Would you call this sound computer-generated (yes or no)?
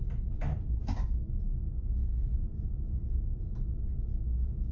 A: no